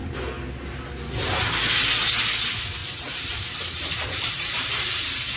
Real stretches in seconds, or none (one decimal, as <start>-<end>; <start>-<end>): 0.0-2.8